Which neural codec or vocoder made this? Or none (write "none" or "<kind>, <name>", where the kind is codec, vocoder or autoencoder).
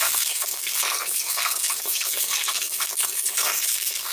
codec, SNAC